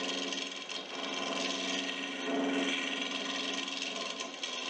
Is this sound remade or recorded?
recorded